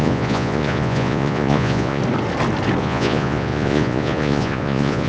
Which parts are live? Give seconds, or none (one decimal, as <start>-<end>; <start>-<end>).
2.0-2.8